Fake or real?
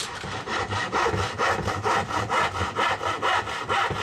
fake